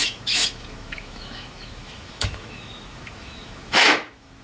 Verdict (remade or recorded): remade